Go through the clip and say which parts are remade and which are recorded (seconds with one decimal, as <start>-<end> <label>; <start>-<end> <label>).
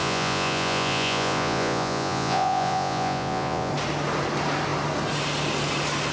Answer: 0.0-3.7 remade; 3.7-6.1 recorded